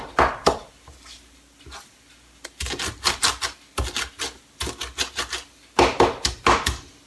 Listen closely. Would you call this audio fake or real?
real